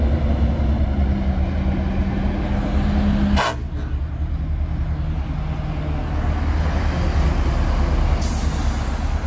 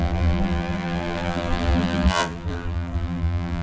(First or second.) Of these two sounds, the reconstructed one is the second